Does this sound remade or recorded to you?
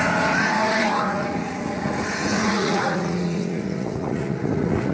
remade